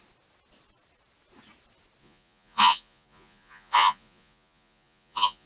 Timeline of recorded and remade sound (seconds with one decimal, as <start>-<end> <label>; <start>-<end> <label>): 0.0-2.0 recorded; 2.0-5.5 remade